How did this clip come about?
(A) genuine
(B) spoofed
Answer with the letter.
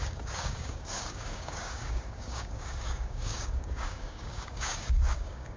B